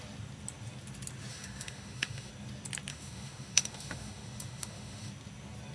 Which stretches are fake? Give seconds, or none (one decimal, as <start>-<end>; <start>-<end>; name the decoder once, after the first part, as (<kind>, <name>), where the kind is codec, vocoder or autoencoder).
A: 1.3-2.3 (autoencoder, DAC-VAE); 2.9-5.1